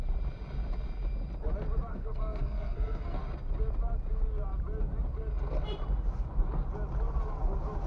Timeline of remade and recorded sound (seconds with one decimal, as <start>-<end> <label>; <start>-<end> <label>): 0.0-1.9 recorded; 1.9-3.2 remade; 3.2-7.9 recorded